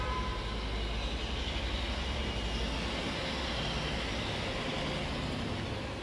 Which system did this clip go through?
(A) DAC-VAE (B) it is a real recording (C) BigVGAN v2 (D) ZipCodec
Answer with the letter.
B